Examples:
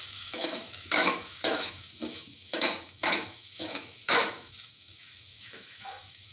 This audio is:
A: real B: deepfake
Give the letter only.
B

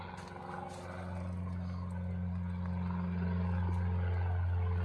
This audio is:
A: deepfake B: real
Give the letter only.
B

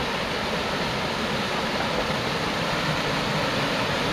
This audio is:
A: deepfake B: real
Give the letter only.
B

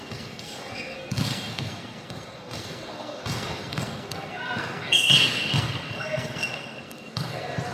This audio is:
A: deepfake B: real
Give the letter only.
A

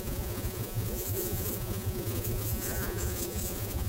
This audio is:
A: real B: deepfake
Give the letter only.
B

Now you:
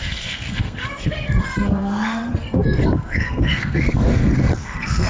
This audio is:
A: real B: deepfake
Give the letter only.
B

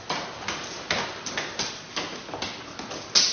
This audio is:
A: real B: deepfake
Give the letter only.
A